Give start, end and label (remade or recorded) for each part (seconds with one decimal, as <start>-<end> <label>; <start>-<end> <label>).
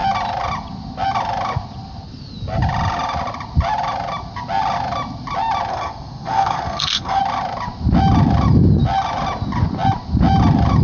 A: 0.0-5.7 recorded; 5.7-7.2 remade; 7.2-10.8 recorded